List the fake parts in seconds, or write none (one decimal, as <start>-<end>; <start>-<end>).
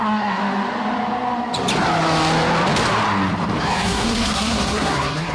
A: 0.0-0.4; 3.6-5.3